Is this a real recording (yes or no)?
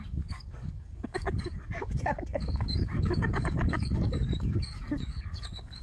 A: no